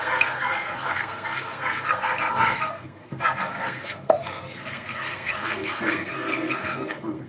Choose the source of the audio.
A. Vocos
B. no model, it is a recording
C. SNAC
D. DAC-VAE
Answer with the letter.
C